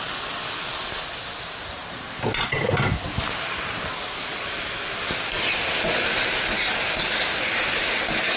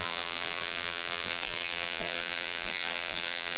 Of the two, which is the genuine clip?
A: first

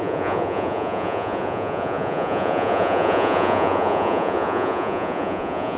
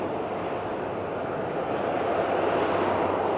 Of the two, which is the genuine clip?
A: second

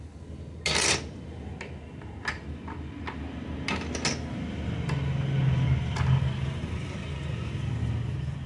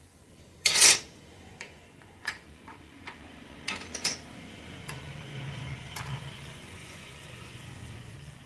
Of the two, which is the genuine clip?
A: first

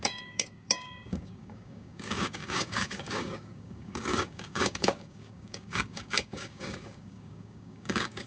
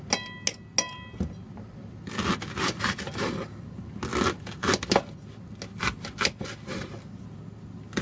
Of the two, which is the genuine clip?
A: second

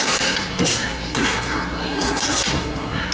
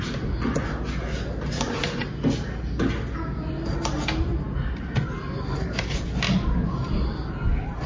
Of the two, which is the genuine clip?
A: second